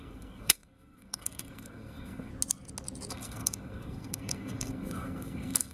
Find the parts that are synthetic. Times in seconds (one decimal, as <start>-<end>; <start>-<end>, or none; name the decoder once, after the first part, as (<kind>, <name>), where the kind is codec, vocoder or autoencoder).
0.0-2.3 (codec, SNAC); 3.1-5.7